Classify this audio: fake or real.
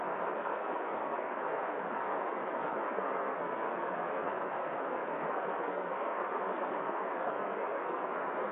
fake